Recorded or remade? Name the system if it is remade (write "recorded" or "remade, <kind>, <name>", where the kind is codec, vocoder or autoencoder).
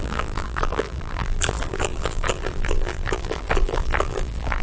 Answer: remade, vocoder, BigVGAN v2